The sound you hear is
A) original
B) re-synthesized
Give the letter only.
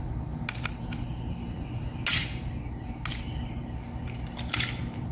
A